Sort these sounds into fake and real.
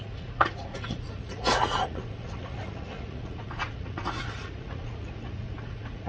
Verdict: fake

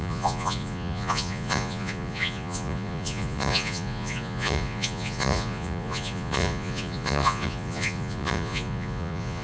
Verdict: fake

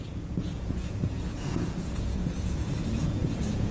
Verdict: fake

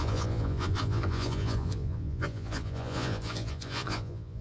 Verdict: fake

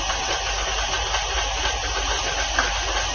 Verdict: real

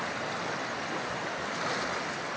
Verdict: real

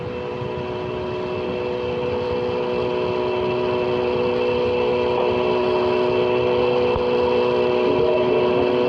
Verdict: real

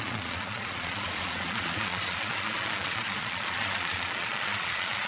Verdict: fake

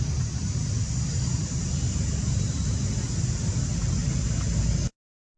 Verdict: real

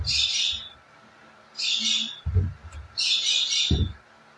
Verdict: real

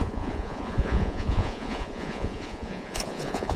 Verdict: fake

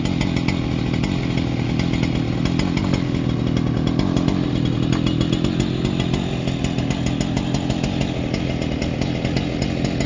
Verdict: real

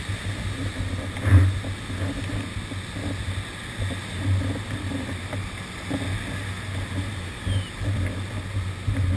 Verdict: real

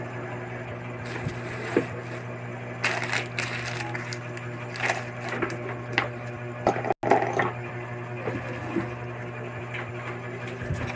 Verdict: real